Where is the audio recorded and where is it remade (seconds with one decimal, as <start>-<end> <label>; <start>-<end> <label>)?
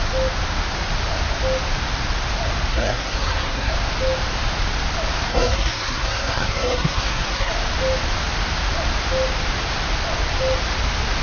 0.0-2.7 recorded; 2.7-3.7 remade; 3.7-5.3 recorded; 5.3-7.5 remade; 7.5-11.2 recorded